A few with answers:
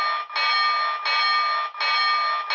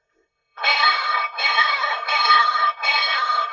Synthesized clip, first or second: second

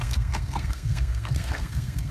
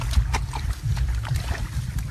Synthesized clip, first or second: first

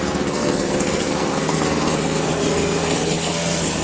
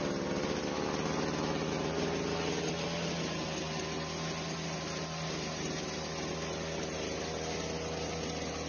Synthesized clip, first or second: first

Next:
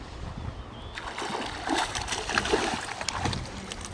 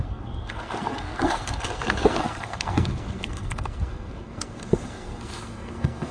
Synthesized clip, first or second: second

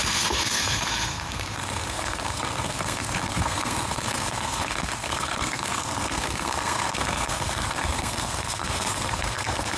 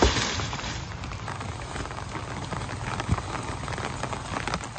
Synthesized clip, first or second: first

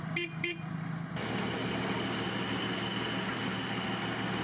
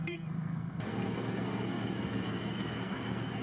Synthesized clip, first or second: second